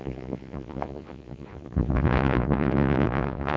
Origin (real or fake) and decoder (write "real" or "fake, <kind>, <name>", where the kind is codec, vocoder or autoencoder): fake, vocoder, Vocos